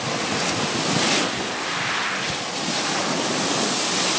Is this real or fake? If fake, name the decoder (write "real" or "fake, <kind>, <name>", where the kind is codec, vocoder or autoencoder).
real